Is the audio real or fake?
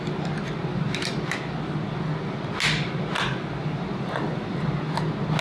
real